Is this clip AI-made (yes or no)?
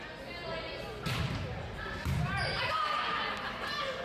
no